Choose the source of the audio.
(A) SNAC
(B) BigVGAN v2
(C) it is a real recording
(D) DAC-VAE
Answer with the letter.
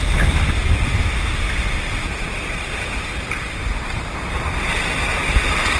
C